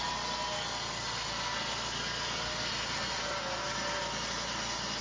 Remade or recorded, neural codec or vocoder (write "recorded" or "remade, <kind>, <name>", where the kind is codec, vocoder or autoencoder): recorded